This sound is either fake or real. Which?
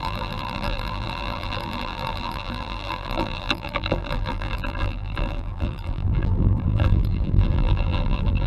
fake